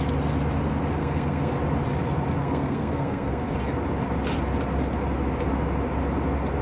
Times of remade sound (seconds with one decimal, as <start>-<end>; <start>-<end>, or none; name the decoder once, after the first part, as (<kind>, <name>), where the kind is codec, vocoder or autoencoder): 1.0-1.5 (codec, SNAC); 2.4-3.5